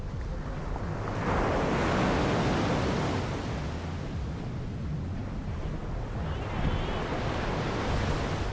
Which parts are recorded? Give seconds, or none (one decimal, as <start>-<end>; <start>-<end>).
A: 0.0-8.5